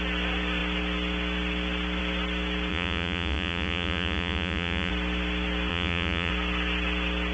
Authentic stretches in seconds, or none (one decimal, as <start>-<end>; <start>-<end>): 0.0-2.7; 4.9-5.7; 6.3-7.3